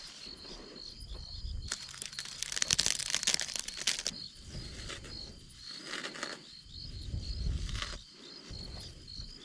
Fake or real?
real